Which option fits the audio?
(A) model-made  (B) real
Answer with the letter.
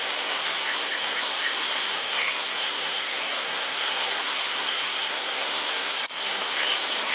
A